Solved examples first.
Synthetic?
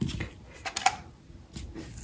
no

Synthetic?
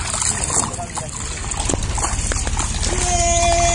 no